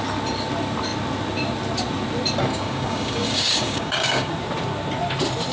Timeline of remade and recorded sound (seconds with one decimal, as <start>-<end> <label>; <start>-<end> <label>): 0.0-2.5 recorded; 2.5-4.3 remade; 4.3-5.5 recorded